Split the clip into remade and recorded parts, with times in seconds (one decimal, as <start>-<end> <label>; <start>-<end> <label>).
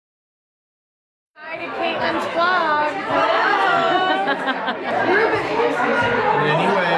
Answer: 0.0-2.8 remade; 2.8-3.3 recorded; 3.3-4.7 remade; 4.7-5.4 recorded; 5.4-5.9 remade; 5.9-7.0 recorded